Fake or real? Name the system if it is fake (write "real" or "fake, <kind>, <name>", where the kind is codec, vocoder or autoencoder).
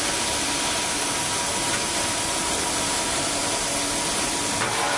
real